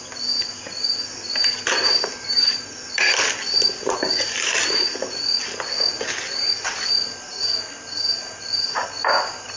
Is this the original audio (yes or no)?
yes